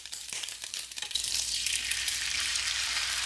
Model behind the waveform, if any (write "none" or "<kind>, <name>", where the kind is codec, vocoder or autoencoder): vocoder, BigVGAN v2